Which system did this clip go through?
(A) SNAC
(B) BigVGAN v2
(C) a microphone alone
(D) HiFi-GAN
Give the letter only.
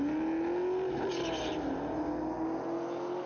C